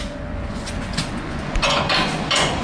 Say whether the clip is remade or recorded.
remade